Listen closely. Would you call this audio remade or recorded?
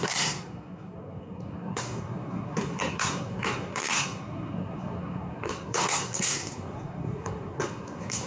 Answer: remade